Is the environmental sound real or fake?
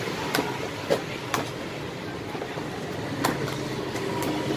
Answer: real